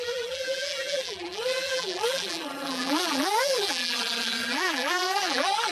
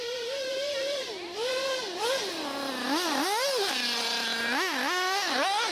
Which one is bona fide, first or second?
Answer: second